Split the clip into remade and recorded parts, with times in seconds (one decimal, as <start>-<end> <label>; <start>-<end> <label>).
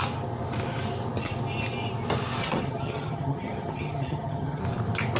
0.0-2.4 recorded; 2.4-4.6 remade; 4.6-5.2 recorded